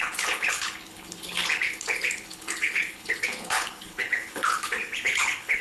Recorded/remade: remade